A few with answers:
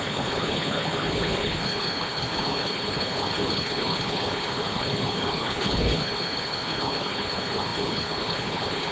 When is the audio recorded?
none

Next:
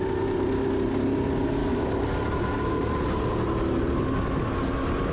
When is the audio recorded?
0.0-5.1

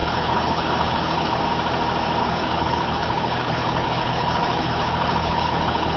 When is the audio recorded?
1.4-2.2

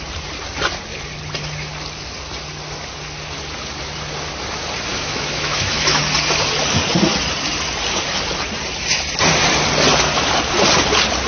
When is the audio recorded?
0.0-4.9; 6.0-11.3